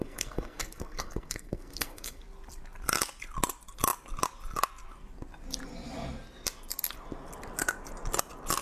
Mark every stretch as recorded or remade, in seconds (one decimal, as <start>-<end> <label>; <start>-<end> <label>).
0.0-2.2 remade; 2.2-8.6 recorded